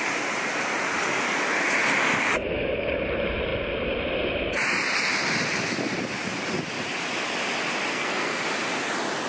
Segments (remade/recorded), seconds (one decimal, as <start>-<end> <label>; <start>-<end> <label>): 0.0-7.9 recorded; 7.9-8.4 remade; 8.4-9.3 recorded